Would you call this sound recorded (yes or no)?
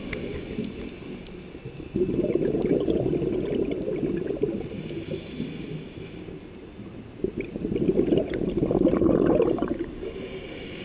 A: yes